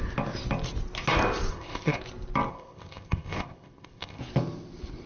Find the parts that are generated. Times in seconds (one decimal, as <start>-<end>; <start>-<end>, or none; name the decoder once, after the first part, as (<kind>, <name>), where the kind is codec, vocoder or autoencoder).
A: 1.5-2.0 (codec, ZipCodec); 2.5-4.2